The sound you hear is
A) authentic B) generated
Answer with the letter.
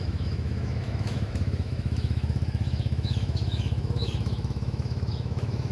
B